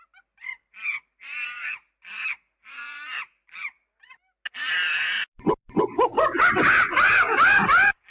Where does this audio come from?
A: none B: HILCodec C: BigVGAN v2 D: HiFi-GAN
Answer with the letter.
A